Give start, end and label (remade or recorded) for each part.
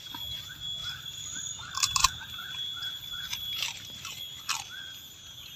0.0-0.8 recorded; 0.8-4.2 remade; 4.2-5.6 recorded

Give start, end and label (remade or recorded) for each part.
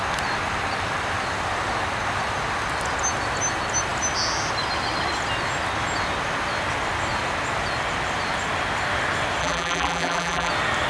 0.0-9.4 recorded; 9.4-10.5 remade; 10.5-10.9 recorded